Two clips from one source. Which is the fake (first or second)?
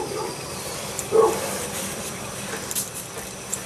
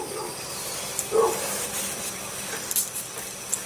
first